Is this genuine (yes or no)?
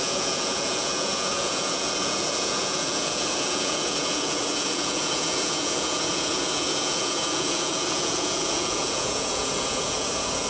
no